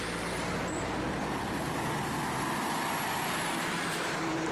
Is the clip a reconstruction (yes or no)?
no